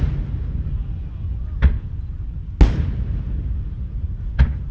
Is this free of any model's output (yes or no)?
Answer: yes